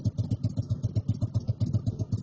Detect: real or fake real